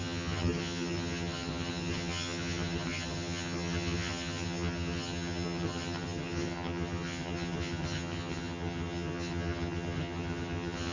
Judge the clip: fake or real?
fake